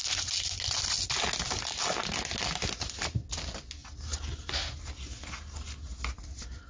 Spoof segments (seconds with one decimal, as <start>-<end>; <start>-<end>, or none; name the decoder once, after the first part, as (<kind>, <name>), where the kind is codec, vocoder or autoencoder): none